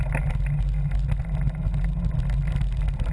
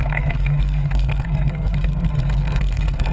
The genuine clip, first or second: first